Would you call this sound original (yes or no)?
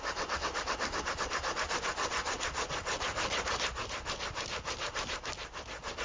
yes